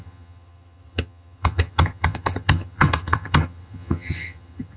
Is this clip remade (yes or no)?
yes